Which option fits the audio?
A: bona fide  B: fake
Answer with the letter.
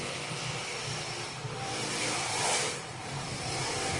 B